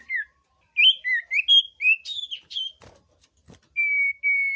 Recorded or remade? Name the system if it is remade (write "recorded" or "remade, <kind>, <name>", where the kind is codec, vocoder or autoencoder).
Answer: recorded